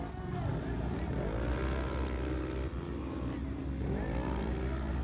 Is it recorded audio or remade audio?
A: recorded